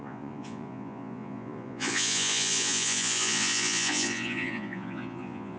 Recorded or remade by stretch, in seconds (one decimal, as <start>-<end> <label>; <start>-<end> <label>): 0.0-5.6 remade